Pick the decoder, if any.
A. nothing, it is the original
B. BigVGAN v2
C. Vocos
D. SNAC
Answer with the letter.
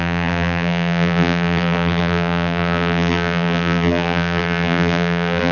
B